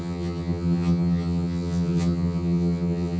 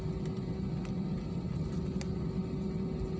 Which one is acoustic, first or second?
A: second